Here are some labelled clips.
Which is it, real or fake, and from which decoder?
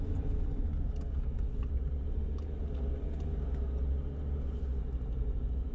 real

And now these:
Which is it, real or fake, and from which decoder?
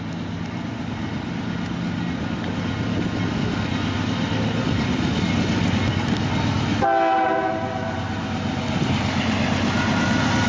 real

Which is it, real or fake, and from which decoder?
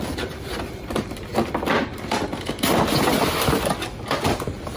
fake, vocoder, BigVGAN v2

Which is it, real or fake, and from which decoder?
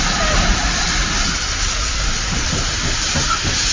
fake, vocoder, BigVGAN v2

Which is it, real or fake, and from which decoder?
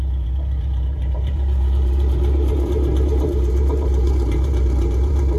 fake, vocoder, BigVGAN v2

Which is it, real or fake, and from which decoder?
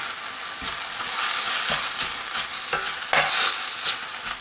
real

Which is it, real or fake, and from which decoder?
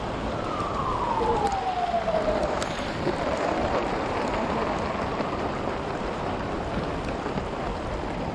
fake, vocoder, BigVGAN v2